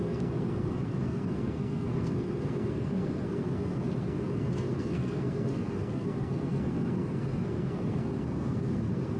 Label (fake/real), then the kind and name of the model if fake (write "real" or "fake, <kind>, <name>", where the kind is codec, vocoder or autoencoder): fake, codec, SNAC